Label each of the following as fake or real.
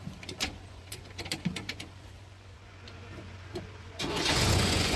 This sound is fake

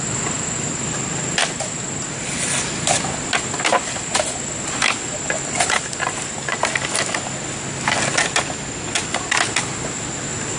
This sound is real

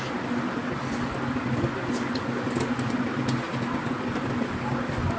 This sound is real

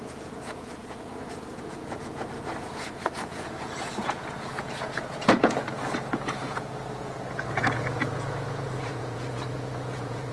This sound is fake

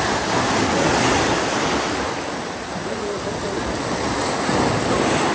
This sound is real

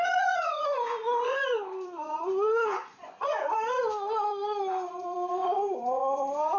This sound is fake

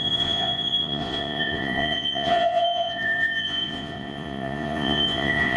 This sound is fake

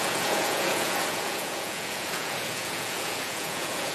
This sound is fake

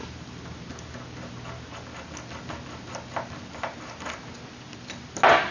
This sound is real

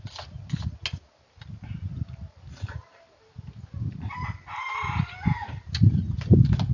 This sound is real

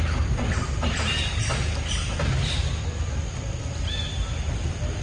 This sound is real